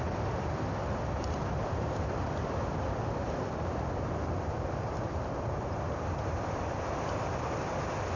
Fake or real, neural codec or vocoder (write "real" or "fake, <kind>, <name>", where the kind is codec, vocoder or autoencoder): fake, vocoder, BigVGAN v2